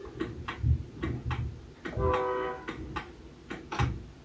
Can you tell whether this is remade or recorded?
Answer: recorded